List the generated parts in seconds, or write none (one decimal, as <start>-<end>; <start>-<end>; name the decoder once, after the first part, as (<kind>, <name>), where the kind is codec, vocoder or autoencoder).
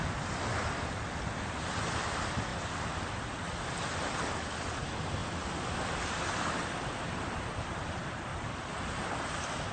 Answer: 8.3-9.1 (vocoder, BigVGAN v2)